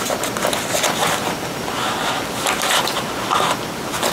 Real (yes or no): yes